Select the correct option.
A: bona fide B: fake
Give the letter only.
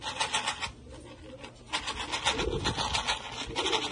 A